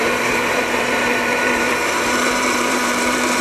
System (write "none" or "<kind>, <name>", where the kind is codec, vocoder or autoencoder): vocoder, BigVGAN v2